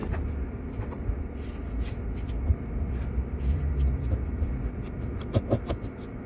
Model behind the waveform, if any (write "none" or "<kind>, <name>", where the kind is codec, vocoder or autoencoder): vocoder, BigVGAN v2